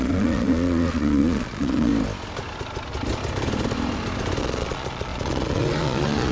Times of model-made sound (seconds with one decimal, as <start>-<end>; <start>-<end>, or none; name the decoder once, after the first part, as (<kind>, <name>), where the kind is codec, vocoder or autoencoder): 0.0-1.9 (vocoder, Vocos); 4.4-6.3